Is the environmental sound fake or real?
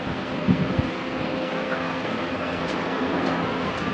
fake